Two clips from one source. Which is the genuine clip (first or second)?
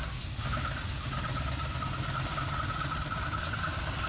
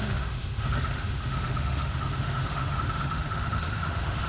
first